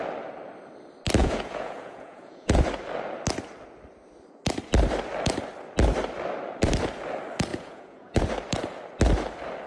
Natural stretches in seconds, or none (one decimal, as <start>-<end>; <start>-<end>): 0.0-1.2; 2.6-7.5; 8.2-9.7